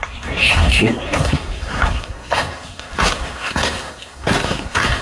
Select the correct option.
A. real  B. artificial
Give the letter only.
B